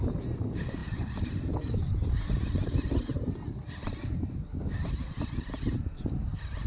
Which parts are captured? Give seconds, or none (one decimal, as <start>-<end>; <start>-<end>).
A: 0.0-6.7